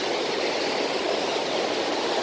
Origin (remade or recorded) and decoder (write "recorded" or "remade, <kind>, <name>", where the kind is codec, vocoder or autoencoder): recorded